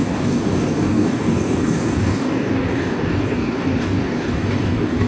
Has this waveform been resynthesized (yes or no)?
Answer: yes